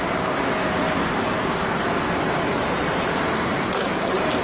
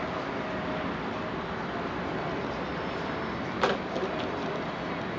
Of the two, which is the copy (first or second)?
first